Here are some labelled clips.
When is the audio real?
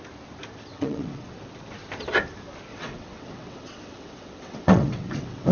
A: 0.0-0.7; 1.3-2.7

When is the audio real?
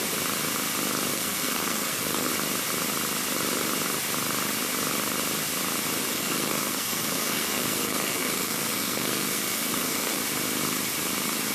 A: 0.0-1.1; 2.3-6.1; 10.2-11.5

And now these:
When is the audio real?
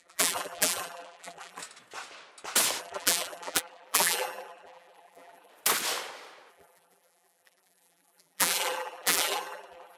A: 1.6-2.8; 5.5-6.5